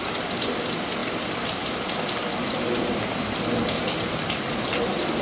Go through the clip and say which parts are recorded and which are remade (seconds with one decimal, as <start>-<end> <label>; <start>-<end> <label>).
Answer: 0.0-5.2 recorded